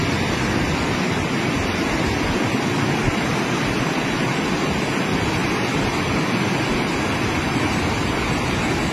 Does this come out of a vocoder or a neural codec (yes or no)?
no